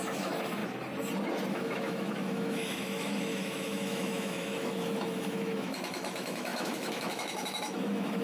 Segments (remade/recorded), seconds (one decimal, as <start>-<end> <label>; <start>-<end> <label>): 0.0-0.6 remade; 0.6-1.5 recorded; 1.5-8.2 remade